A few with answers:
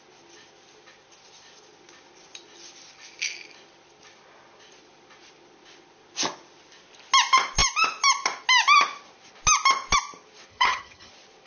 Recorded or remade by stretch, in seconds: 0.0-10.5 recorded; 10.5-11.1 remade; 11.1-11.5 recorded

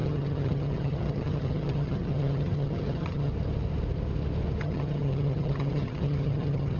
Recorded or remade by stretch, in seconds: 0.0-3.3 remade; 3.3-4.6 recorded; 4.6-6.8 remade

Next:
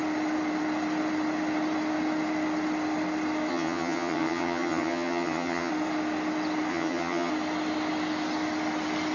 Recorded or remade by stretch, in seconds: 0.0-3.5 recorded; 3.5-5.7 remade; 5.7-6.7 recorded; 6.7-7.3 remade; 7.3-9.1 recorded

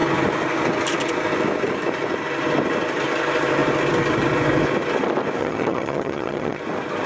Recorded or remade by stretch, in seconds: 0.0-5.4 recorded; 5.4-6.6 remade; 6.6-7.1 recorded

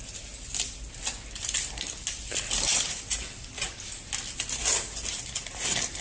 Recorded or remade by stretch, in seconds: 0.0-6.0 recorded

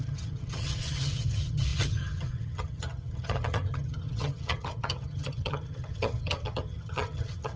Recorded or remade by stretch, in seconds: 0.0-7.6 remade

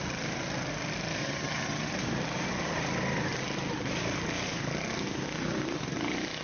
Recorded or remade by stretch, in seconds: 0.0-1.2 recorded; 1.2-1.9 remade; 1.9-6.4 recorded